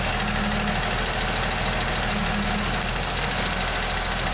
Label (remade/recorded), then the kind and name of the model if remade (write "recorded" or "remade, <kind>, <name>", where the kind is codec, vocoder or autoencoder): recorded